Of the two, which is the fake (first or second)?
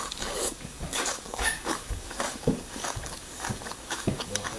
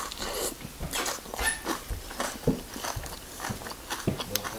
first